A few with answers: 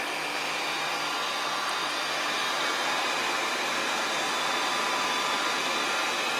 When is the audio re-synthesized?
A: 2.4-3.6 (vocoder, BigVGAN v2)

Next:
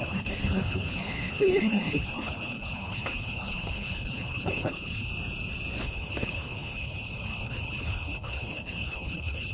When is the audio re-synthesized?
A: 0.0-5.1 (codec, HILCodec); 5.8-9.5

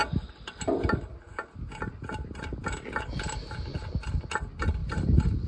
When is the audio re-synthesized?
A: 4.8-5.5 (vocoder, BigVGAN v2)

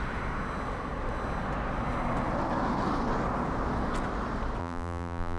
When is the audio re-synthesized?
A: 4.6-5.4 (vocoder, BigVGAN v2)

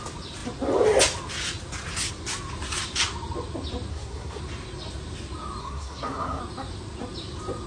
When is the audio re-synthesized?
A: 3.9-4.4 (codec, SNAC); 5.6-6.4